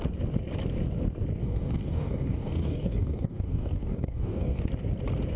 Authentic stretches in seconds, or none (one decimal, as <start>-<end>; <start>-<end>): 0.0-1.4; 4.6-5.4